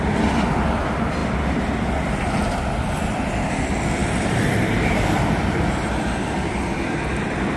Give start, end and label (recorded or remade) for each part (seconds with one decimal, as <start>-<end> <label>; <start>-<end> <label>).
0.0-7.6 recorded